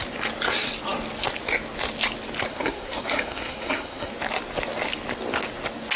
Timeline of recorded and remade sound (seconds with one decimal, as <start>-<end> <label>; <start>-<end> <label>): 0.0-2.5 recorded; 2.5-4.1 remade; 4.1-6.0 recorded